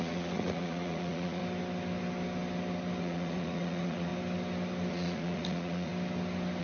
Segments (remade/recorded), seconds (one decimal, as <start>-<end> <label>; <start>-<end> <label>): 0.0-1.4 remade; 1.4-3.0 recorded; 3.0-4.1 remade; 4.1-4.9 recorded; 4.9-5.9 remade; 5.9-6.6 recorded